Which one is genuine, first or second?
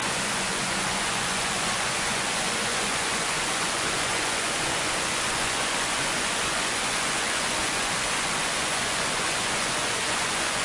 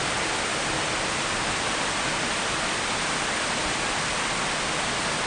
second